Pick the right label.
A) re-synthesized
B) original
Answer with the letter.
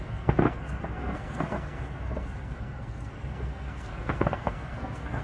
A